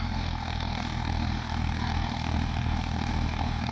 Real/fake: fake